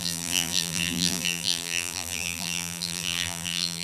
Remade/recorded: remade